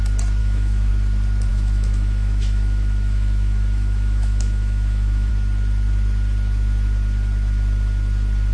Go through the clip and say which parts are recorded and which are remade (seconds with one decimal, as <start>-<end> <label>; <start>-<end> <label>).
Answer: 0.0-0.4 recorded; 0.4-0.9 remade; 0.9-1.5 recorded; 1.5-5.3 remade; 5.3-8.5 recorded